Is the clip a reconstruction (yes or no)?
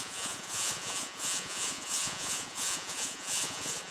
yes